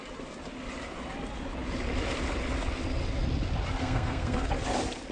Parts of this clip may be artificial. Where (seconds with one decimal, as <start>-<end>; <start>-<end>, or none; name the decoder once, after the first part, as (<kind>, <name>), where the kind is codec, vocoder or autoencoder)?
3.8-4.5 (codec, SNAC)